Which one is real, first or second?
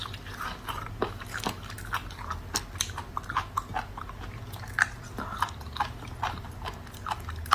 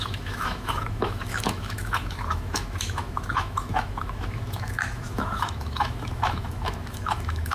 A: first